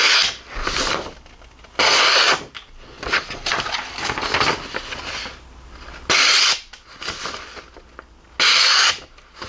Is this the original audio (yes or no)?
yes